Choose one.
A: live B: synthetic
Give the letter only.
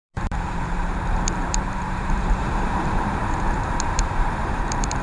B